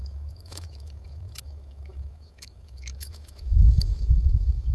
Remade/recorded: remade